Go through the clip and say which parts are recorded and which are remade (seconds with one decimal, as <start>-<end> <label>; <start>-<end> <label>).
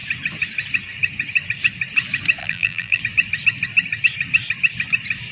0.0-2.4 recorded; 2.4-3.0 remade; 3.0-5.3 recorded